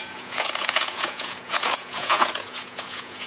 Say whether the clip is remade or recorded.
remade